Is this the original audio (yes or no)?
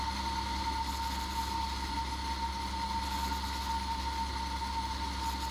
yes